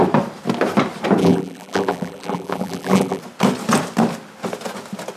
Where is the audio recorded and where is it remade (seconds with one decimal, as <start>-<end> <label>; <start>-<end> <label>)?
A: 0.0-1.2 recorded; 1.2-3.2 remade; 3.2-5.2 recorded